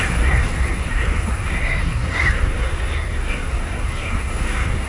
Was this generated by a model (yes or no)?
yes